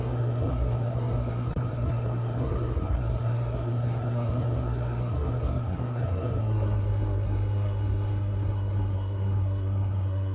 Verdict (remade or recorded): remade